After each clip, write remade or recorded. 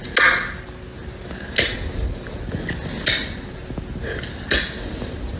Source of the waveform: recorded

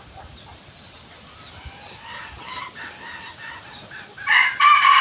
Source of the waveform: recorded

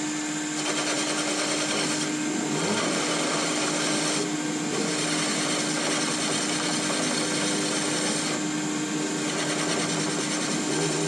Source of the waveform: recorded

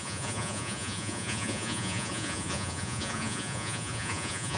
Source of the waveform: remade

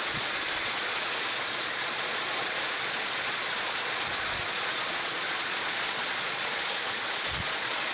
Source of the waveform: remade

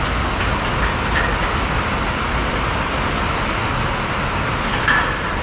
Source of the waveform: recorded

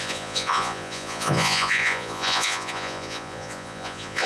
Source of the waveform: remade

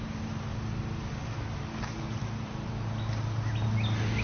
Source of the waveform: recorded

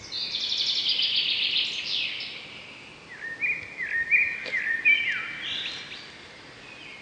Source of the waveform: recorded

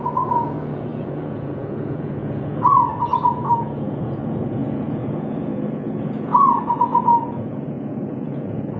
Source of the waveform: remade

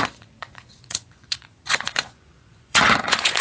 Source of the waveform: remade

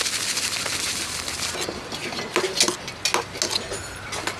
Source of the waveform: recorded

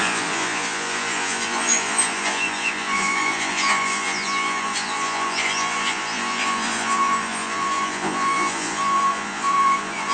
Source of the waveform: remade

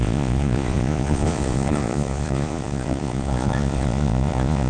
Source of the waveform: remade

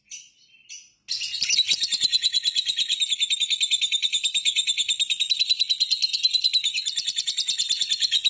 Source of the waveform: recorded